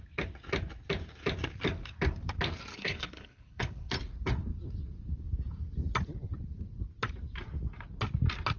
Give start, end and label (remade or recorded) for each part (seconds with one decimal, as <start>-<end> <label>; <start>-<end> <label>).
0.0-2.7 recorded; 2.7-3.9 remade; 3.9-8.6 recorded